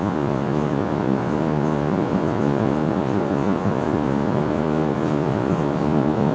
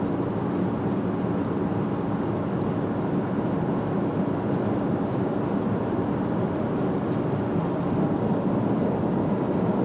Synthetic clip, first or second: first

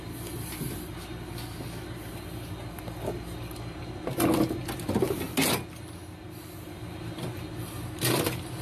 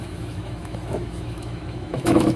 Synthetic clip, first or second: second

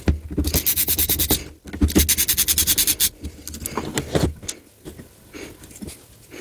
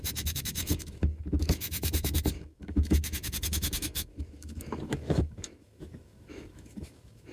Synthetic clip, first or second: second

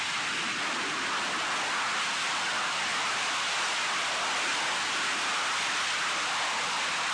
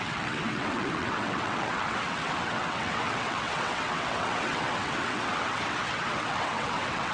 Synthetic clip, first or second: second